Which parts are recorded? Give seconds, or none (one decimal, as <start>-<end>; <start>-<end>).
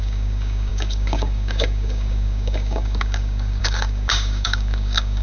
none